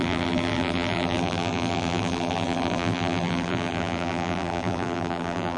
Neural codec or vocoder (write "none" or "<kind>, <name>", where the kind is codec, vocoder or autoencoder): vocoder, BigVGAN v2